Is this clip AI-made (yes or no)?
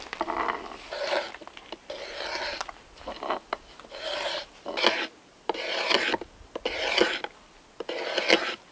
no